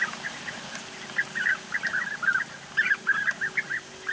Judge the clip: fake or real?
real